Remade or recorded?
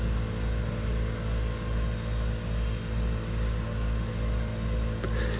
recorded